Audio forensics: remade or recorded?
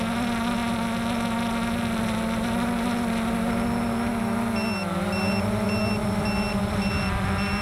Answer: recorded